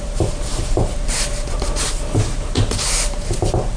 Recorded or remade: remade